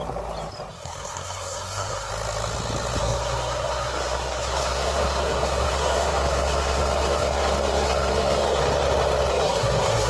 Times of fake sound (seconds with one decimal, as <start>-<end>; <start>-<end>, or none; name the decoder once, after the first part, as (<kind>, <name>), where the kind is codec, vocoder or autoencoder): 0.7-2.1 (codec, SNAC); 3.0-8.6; 9.3-10.1